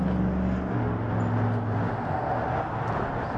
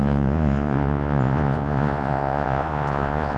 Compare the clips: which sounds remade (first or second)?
second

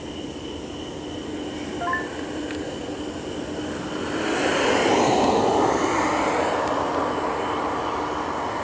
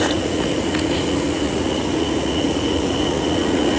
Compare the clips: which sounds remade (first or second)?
second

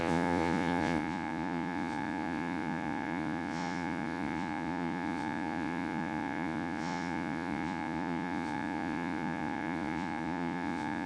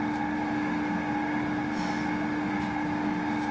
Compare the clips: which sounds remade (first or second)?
first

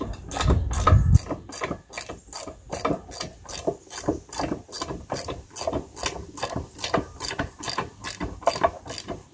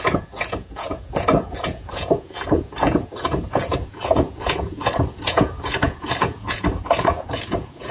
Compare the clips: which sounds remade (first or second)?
second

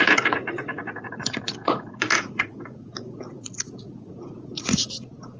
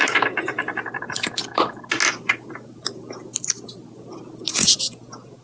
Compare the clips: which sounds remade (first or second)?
first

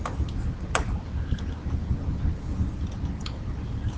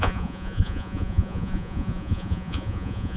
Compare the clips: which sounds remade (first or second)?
second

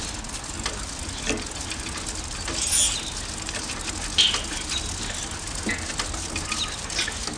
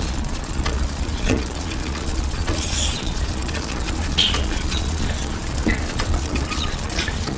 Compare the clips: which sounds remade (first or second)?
second